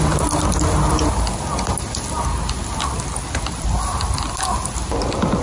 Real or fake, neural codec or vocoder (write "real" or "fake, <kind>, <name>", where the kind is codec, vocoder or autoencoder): real